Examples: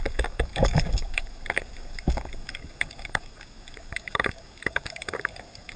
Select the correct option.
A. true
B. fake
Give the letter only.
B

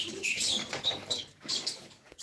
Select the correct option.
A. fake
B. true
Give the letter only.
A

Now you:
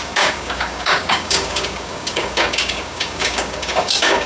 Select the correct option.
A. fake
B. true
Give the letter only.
A